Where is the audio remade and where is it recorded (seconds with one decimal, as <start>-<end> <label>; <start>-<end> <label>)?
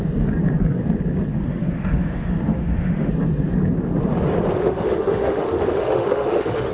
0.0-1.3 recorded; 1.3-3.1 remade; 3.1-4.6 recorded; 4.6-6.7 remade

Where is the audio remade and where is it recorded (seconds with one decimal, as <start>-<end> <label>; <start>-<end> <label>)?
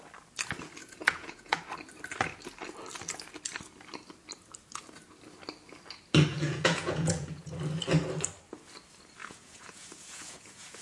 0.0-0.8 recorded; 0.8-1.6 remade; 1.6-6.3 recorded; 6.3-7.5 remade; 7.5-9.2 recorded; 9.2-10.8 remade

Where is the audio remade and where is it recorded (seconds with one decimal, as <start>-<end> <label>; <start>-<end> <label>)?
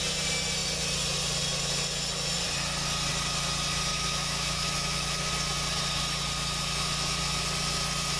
0.0-3.9 recorded; 3.9-5.3 remade; 5.3-8.2 recorded